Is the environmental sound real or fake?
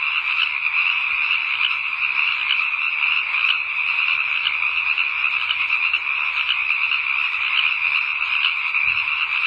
real